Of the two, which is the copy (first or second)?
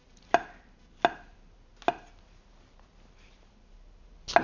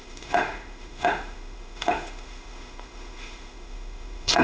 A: second